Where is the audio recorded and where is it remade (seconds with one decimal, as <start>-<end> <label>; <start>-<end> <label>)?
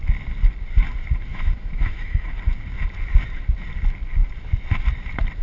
0.0-1.3 recorded; 1.3-2.4 remade; 2.4-5.4 recorded